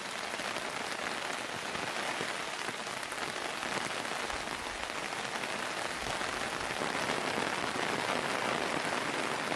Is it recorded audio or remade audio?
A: recorded